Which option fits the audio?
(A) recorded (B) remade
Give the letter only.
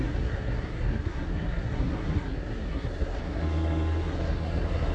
B